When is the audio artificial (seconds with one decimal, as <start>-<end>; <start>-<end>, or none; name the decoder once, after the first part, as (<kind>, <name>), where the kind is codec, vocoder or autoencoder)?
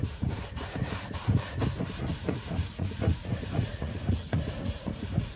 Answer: 2.1-5.4 (vocoder, Vocos)